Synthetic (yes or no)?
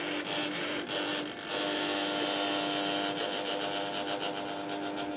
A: no